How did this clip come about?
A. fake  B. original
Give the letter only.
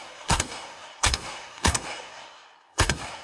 A